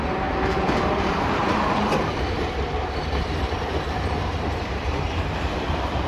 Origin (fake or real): fake